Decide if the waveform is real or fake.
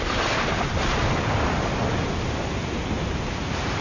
real